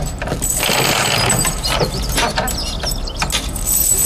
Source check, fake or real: real